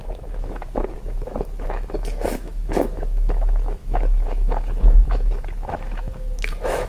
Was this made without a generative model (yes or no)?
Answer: no